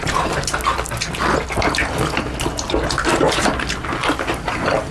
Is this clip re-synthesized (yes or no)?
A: no